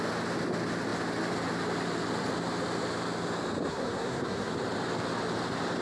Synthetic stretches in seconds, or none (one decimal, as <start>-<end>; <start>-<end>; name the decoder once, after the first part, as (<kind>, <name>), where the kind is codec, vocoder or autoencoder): 3.7-4.5 (codec, SNAC)